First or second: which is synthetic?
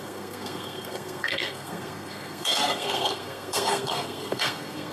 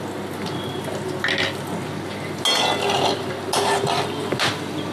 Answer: first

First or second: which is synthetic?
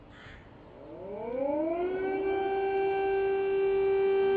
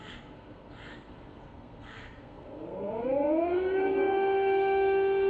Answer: second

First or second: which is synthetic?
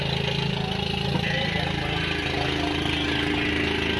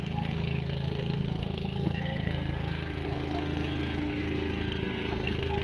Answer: second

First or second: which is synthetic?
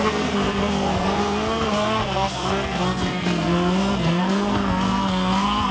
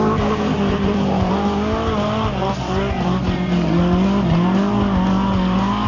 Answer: first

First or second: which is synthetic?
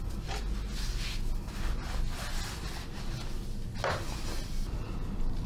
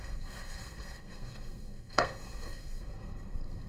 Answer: second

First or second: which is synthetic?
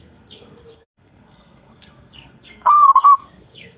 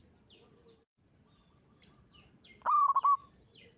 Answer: first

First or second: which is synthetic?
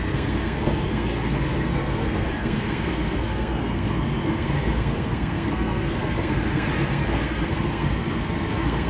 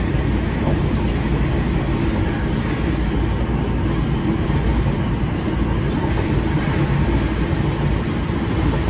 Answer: first